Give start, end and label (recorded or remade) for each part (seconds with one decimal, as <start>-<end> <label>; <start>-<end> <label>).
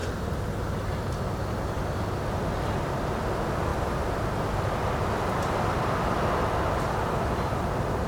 0.0-8.1 recorded